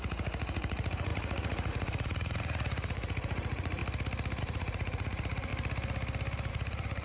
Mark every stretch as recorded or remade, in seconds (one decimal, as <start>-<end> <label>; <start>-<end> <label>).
0.0-3.8 remade; 3.8-4.4 recorded; 4.4-5.5 remade; 5.5-6.5 recorded; 6.5-7.0 remade